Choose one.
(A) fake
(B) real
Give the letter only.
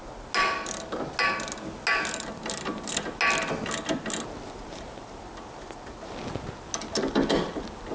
B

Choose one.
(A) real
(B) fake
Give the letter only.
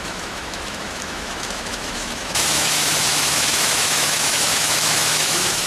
B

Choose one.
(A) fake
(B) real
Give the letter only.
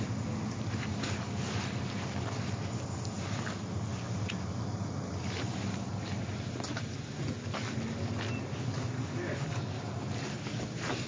B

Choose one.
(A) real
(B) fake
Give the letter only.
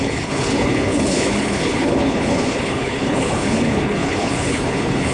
B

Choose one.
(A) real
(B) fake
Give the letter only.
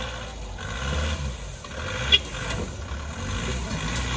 A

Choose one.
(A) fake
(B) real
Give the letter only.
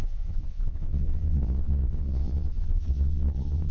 A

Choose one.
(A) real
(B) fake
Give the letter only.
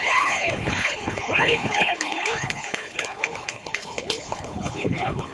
B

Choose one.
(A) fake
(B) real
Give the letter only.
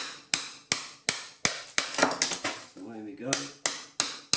B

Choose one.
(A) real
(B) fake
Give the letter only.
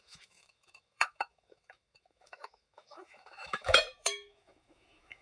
B